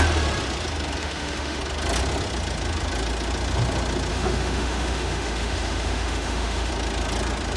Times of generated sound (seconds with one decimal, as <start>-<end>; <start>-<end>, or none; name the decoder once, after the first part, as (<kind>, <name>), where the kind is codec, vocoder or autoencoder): 1.0-1.6 (autoencoder, DAC-VAE); 4.1-6.7